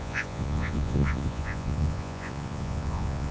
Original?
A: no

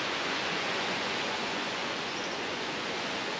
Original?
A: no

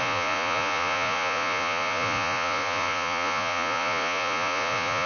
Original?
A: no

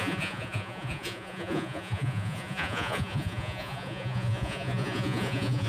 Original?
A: no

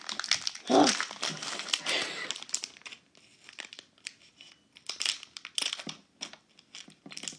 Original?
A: yes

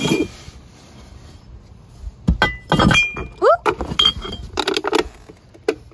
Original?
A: yes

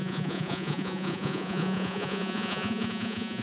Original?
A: no